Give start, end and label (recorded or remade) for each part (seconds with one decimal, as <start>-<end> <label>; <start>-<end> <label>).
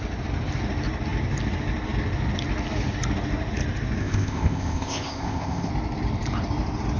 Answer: 0.0-4.0 recorded; 4.0-5.7 remade; 5.7-7.0 recorded